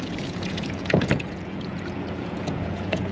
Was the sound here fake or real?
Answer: fake